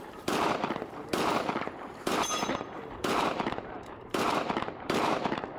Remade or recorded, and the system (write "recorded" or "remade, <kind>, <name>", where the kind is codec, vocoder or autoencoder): remade, vocoder, BigVGAN v2